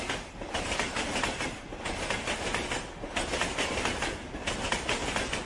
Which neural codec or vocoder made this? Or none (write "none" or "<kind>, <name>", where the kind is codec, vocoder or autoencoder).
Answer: none